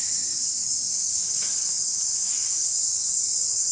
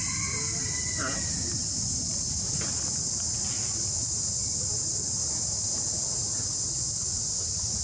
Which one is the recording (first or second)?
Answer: second